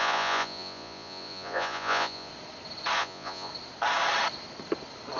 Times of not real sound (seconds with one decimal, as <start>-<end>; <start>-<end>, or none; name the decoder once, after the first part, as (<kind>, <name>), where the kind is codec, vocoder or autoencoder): 0.0-2.3 (vocoder, Vocos); 3.0-3.5